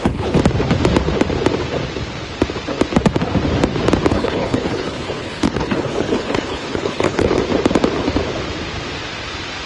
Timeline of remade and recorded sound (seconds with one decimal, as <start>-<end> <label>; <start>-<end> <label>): 0.0-0.4 remade; 0.4-4.1 recorded; 4.1-7.4 remade; 7.4-9.7 recorded